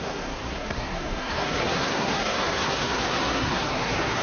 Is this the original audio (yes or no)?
no